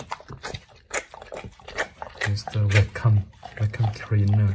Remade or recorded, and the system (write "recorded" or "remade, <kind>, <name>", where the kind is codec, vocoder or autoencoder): recorded